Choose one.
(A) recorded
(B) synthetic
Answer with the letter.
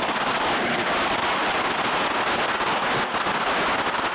A